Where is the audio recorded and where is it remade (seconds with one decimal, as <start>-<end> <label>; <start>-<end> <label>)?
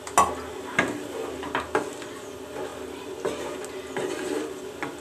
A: 0.0-5.0 recorded